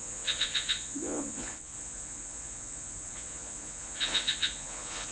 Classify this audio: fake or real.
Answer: fake